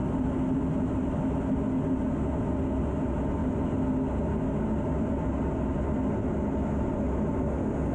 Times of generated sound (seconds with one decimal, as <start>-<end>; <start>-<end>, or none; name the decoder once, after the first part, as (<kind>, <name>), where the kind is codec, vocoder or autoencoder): 0.0-0.6 (vocoder, BigVGAN v2)